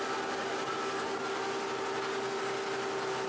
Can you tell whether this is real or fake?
real